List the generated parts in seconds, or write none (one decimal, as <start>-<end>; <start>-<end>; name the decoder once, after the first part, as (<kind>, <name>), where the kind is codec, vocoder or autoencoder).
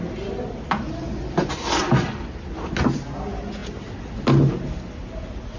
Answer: none